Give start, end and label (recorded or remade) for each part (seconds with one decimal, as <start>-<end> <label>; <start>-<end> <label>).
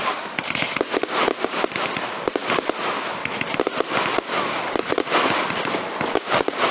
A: 0.0-6.7 recorded